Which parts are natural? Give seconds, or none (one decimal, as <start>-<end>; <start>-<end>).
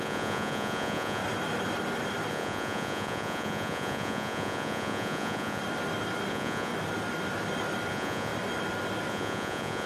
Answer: 1.2-2.3; 5.6-6.3; 6.7-7.9; 8.3-9.1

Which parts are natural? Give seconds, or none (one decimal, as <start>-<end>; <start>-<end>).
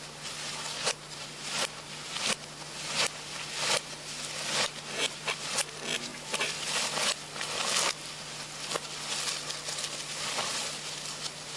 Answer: 0.0-6.1; 7.7-11.6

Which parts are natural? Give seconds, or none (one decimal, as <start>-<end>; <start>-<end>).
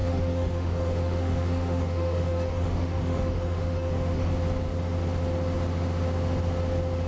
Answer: 4.3-7.1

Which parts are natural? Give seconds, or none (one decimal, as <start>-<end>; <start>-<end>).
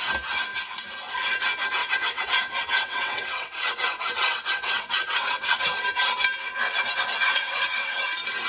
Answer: 0.0-1.8; 5.6-7.3; 8.0-8.5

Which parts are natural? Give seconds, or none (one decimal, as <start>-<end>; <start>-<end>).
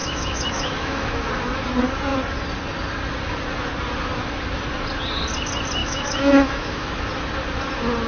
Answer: 1.3-5.8; 7.1-8.1